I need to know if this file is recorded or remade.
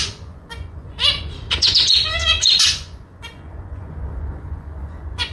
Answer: remade